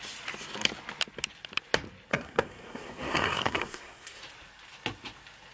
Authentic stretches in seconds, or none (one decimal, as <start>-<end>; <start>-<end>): 0.0-2.1; 4.2-5.5